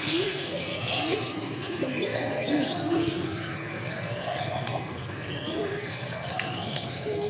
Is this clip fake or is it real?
fake